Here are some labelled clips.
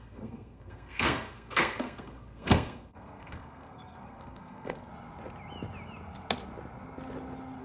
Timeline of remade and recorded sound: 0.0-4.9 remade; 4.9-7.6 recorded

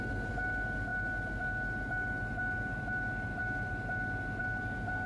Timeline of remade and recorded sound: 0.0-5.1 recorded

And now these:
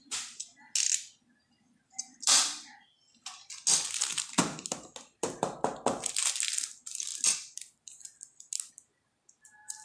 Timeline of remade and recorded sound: 0.0-9.8 recorded

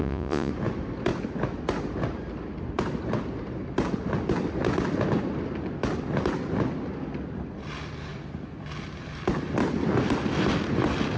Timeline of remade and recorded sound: 0.0-0.5 remade; 0.5-11.2 recorded

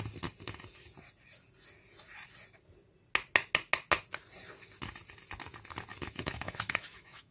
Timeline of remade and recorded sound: 0.0-5.9 recorded; 5.9-7.3 remade

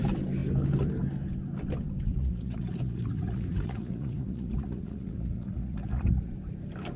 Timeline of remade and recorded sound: 0.0-2.1 recorded; 2.1-6.3 remade; 6.3-7.0 recorded

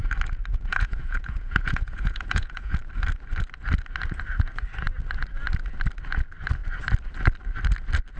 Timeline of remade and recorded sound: 0.0-0.5 recorded; 0.5-2.7 remade; 2.7-8.2 recorded